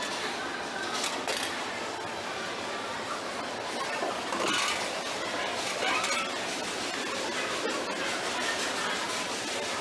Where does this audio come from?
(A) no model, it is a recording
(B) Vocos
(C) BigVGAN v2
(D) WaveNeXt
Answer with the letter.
A